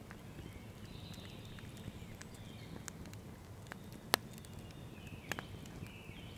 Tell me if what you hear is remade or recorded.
recorded